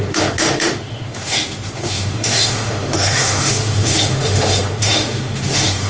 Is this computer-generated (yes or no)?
yes